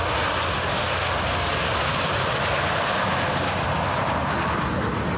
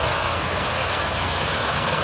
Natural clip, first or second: first